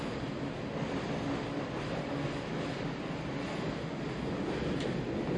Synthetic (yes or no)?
no